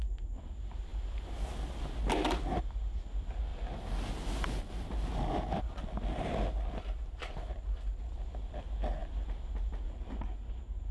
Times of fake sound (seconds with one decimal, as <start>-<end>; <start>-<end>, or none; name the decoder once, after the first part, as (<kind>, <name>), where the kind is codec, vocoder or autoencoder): none